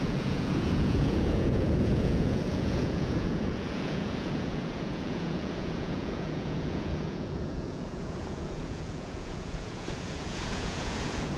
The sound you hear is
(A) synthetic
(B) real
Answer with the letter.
A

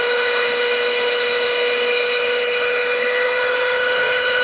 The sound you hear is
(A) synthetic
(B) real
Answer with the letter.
A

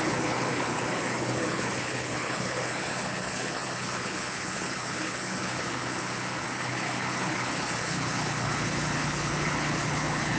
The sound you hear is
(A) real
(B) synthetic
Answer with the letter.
B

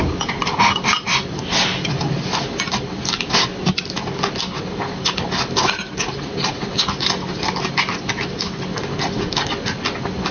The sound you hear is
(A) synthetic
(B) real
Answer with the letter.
B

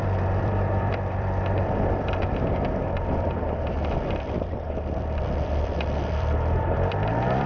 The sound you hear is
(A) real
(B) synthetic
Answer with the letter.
B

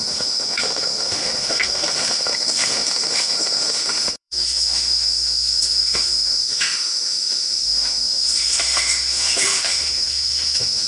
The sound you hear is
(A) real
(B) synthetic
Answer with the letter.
B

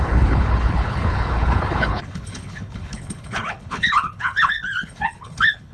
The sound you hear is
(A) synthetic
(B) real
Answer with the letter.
A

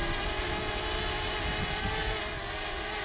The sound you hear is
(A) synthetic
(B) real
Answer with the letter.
B